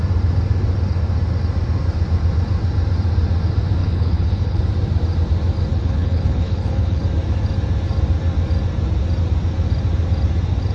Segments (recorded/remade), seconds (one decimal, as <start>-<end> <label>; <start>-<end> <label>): 0.0-3.8 recorded; 3.8-4.6 remade; 4.6-5.7 recorded; 5.7-7.0 remade; 7.0-10.7 recorded